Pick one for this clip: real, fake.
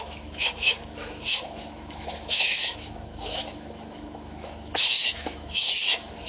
fake